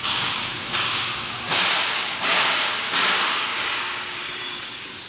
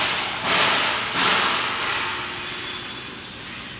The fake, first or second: first